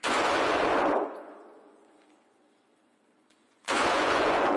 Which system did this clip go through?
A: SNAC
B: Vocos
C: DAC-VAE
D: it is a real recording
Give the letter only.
B